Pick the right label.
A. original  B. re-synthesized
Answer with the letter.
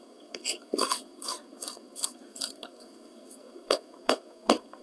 B